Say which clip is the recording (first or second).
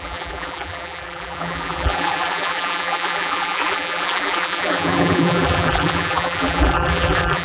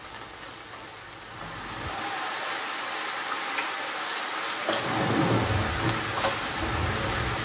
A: second